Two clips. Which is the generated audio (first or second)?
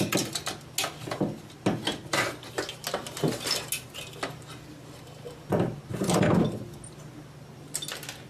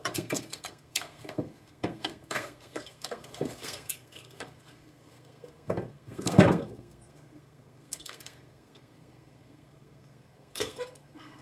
second